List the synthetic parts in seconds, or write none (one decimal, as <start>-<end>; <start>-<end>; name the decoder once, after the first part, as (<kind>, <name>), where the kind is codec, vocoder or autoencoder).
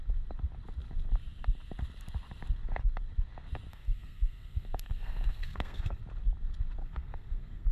3.7-6.0 (codec, SNAC); 6.8-7.7